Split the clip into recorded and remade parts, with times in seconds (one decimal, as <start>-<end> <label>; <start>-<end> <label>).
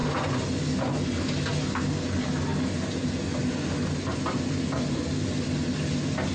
0.0-6.3 recorded